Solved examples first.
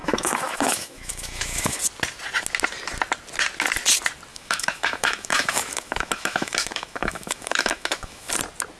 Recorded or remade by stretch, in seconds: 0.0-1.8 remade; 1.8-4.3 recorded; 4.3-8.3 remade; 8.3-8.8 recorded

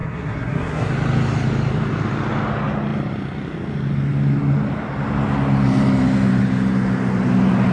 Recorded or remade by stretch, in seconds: 0.0-0.9 remade; 0.9-7.7 recorded

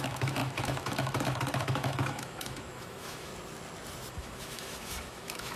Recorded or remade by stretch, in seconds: 0.0-3.3 remade; 3.3-4.1 recorded; 4.1-5.6 remade

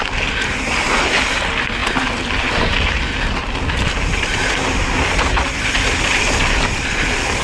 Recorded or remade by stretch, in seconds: 0.0-7.4 recorded

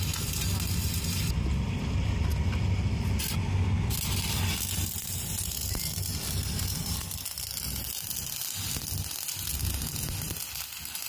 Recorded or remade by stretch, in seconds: 0.0-11.1 recorded

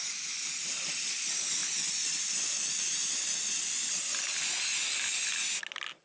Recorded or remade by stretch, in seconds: 0.0-6.0 recorded